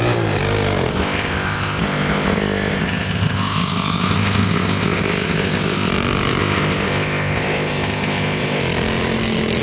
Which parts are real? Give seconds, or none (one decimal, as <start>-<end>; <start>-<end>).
0.0-0.9; 5.9-6.4; 8.6-9.6